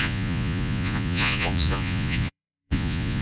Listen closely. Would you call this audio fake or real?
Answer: fake